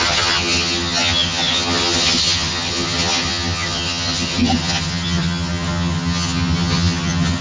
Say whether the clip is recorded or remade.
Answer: remade